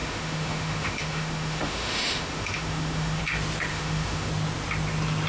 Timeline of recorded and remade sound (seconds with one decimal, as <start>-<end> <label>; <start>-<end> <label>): 0.0-3.2 remade; 3.2-3.7 recorded; 3.7-4.3 remade; 4.3-5.3 recorded